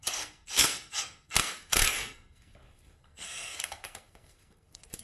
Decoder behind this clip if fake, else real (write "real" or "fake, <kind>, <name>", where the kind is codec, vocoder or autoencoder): fake, codec, SNAC